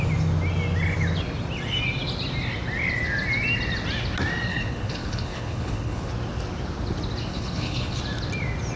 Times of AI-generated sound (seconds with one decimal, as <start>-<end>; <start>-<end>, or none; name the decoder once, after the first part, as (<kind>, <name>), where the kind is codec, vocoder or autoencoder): 4.5-6.1 (codec, HILCodec); 7.3-8.0